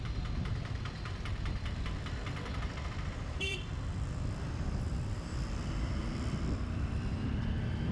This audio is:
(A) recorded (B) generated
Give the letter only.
B